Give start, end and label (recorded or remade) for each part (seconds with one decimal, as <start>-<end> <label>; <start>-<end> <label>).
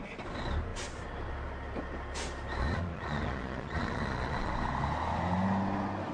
0.0-2.6 recorded; 2.6-4.5 remade; 4.5-6.1 recorded